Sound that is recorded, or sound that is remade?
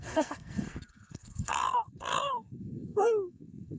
remade